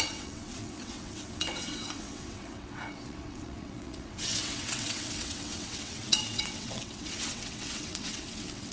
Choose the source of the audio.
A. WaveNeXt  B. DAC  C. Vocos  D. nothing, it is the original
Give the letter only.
A